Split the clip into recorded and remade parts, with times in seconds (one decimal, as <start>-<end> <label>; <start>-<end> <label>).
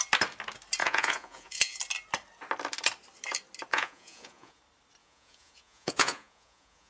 0.0-0.8 recorded; 0.8-1.8 remade; 1.8-3.7 recorded; 3.7-4.6 remade; 4.6-5.0 recorded; 5.0-6.9 remade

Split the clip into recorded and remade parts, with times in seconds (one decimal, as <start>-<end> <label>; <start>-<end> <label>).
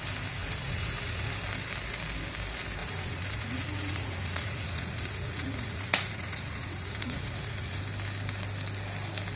0.0-0.4 recorded; 0.4-1.3 remade; 1.3-2.8 recorded; 2.8-7.8 remade; 7.8-9.4 recorded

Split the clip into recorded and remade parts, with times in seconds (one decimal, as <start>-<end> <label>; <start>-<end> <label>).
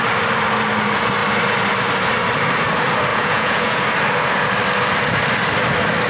0.0-3.1 recorded; 3.1-3.8 remade; 3.8-6.1 recorded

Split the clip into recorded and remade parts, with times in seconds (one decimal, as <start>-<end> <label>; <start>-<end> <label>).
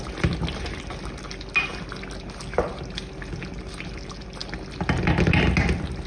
0.0-6.1 recorded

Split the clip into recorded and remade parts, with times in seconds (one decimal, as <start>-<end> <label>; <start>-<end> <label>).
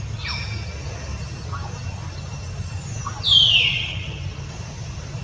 0.0-5.2 recorded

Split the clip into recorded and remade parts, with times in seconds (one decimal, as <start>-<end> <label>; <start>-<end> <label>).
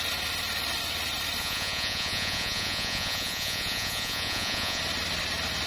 0.0-1.4 recorded; 1.4-4.8 remade; 4.8-5.7 recorded